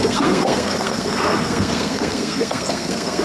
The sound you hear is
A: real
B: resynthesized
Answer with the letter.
B